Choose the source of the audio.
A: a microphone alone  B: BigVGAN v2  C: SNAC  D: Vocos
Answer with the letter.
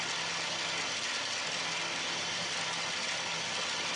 A